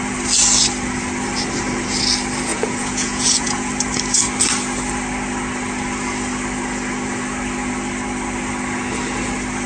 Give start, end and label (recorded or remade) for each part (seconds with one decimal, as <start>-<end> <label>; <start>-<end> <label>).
0.0-2.5 recorded; 2.5-3.7 remade; 3.7-9.7 recorded